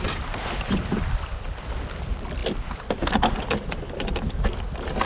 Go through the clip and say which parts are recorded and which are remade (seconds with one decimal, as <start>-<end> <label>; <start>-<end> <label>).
0.0-5.1 recorded